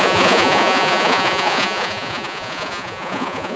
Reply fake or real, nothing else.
fake